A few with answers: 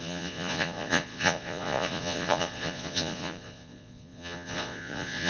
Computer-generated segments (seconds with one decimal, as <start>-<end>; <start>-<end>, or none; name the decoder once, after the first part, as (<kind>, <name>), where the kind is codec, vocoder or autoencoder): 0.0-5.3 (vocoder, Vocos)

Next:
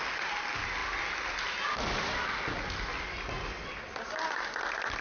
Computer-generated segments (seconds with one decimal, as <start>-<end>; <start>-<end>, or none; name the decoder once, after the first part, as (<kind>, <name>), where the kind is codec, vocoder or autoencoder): none

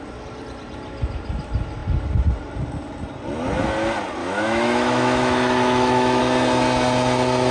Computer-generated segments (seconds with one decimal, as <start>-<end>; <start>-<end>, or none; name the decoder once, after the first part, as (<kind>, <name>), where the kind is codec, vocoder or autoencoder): 4.2-6.2 (autoencoder, DAC-VAE)

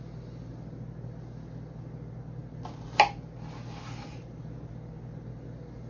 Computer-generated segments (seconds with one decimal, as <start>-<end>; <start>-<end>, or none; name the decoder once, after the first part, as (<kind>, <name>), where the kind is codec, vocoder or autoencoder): none

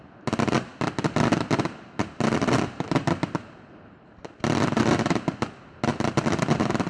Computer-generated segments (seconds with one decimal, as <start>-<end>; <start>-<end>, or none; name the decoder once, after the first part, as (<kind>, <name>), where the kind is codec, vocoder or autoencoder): none

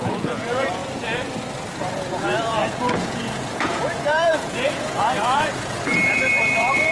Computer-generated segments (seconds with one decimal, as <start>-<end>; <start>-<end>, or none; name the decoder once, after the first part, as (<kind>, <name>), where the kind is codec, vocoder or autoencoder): 0.0-0.8 (vocoder, Vocos); 1.9-6.9

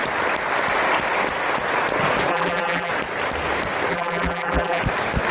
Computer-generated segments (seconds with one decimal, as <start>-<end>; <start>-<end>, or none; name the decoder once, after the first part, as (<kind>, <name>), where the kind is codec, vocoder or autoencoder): 2.3-2.9 (vocoder, BigVGAN v2); 3.9-4.8